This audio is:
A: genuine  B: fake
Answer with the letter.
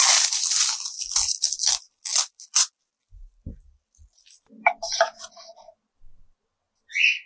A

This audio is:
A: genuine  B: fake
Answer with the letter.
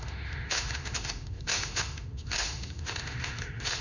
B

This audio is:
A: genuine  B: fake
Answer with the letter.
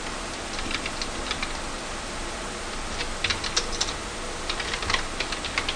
A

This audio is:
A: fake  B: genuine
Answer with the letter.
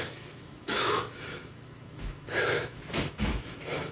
A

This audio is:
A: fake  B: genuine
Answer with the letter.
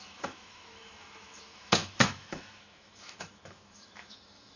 A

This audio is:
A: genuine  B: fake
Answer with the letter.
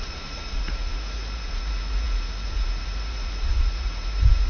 B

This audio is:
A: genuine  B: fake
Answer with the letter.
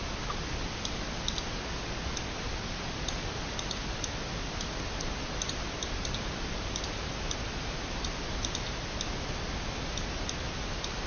A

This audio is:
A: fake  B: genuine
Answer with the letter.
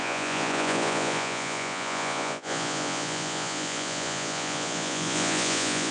A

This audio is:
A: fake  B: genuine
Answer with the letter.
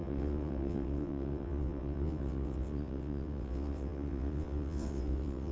A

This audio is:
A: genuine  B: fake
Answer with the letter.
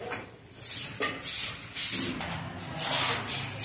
A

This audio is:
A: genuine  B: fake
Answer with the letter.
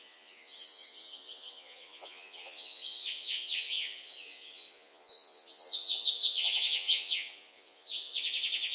B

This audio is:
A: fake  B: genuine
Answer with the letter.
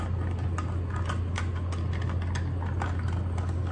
B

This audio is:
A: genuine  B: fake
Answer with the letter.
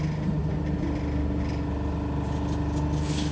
A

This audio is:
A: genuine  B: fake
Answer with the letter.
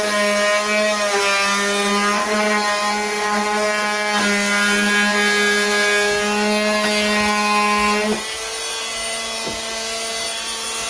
A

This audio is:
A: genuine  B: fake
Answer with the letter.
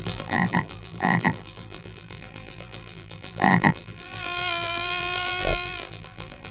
B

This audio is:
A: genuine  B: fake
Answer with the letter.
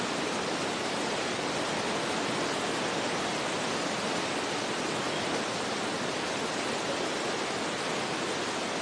A